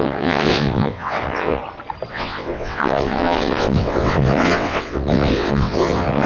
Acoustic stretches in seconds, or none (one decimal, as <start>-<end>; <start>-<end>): 1.6-2.1